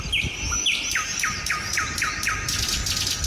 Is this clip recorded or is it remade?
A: recorded